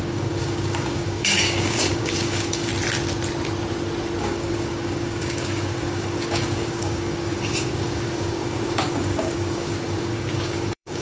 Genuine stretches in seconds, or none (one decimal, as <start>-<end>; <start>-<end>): 2.7-4.2